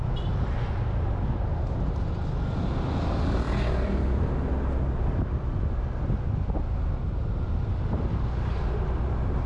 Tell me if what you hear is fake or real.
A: real